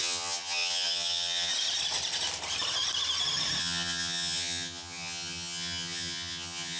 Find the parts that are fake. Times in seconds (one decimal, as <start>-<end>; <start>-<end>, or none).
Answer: 0.0-1.5; 3.6-6.8